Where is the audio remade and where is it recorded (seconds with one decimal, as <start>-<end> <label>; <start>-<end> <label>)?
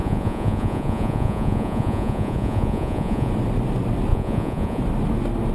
0.0-3.3 remade; 3.3-4.1 recorded; 4.1-4.8 remade; 4.8-5.5 recorded